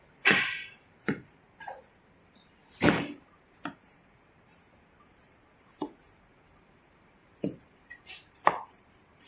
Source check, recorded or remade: remade